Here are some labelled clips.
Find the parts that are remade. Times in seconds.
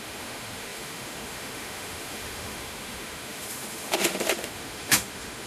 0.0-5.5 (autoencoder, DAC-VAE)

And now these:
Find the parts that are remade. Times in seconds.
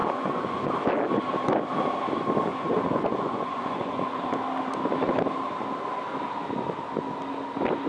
0.0-0.7 (vocoder, Vocos); 2.5-4.3